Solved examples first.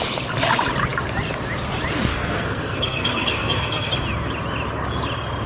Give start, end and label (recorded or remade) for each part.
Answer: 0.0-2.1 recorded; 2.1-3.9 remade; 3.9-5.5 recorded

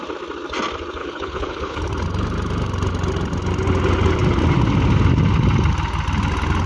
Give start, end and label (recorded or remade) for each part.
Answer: 0.0-1.0 recorded; 1.0-1.8 remade; 1.8-6.7 recorded

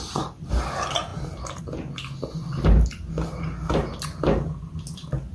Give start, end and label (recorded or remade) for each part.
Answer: 0.0-5.3 recorded

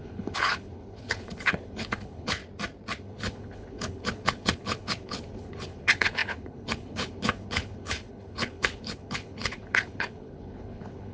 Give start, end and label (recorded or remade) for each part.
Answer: 0.0-2.4 remade; 2.4-3.0 recorded; 3.0-11.1 remade